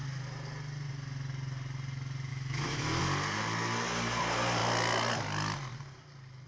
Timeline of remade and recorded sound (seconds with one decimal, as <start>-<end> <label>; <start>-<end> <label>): 0.0-2.3 recorded; 2.3-3.0 remade; 3.0-6.5 recorded